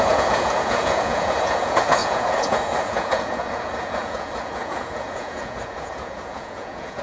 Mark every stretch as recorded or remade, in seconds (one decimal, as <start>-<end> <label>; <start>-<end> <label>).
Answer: 0.0-7.0 remade